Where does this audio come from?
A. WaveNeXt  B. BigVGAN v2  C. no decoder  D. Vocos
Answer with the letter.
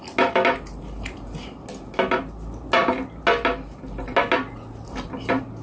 C